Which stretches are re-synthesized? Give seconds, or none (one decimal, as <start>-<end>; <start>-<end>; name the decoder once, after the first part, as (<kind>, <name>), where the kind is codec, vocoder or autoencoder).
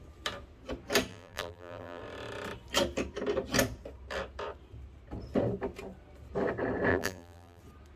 1.1-2.0 (vocoder, BigVGAN v2); 6.9-7.6